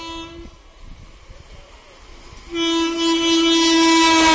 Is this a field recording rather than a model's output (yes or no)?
yes